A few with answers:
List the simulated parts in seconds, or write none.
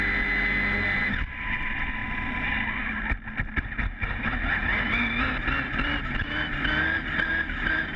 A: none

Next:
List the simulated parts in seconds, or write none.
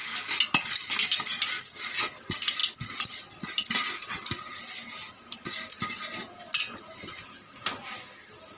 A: none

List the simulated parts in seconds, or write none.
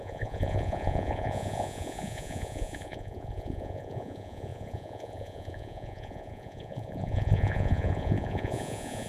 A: 0.0-9.1 (vocoder, Vocos)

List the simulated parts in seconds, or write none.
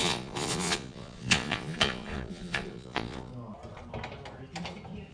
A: 0.0-3.3 (vocoder, Vocos)